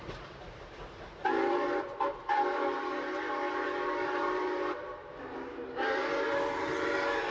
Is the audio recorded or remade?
remade